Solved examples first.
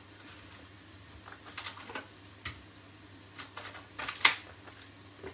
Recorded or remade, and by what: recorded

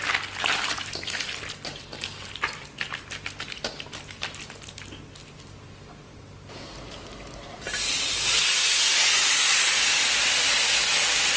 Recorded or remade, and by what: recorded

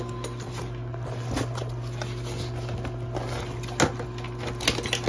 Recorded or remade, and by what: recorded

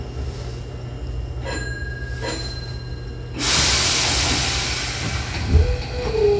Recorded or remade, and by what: recorded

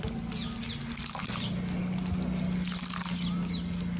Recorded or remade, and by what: recorded